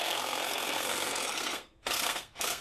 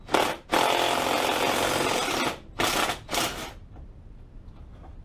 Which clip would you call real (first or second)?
second